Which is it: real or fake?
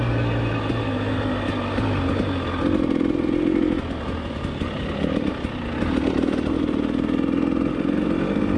real